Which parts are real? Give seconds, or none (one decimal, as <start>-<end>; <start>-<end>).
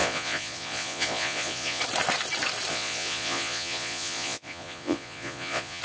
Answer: 1.8-2.7